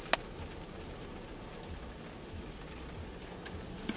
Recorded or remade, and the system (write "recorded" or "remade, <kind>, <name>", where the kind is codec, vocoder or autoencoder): recorded